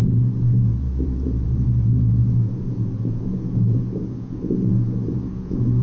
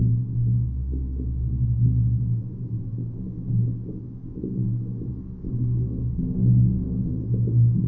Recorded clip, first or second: second